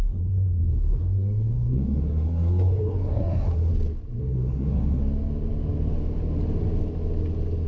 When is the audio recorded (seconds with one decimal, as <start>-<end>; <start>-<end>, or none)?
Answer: 3.7-4.2; 5.0-7.7